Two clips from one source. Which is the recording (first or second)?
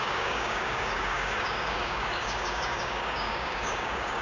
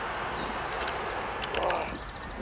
second